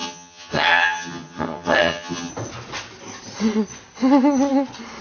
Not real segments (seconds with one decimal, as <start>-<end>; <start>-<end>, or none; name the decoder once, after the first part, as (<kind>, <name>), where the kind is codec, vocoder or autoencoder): 0.0-2.3 (vocoder, HiFi-GAN)